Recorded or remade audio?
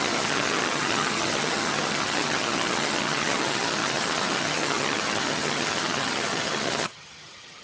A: remade